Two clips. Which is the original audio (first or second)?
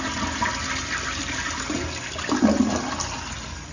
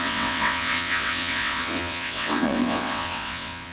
first